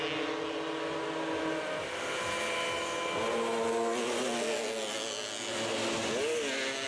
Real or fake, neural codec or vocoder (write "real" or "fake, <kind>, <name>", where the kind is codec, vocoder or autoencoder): real